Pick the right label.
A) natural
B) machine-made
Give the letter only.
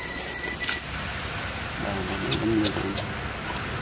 A